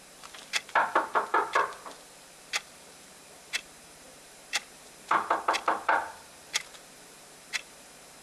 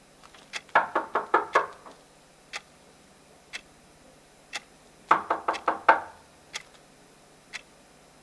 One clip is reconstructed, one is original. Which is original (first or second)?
second